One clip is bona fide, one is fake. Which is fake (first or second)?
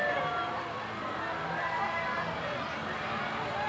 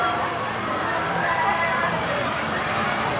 second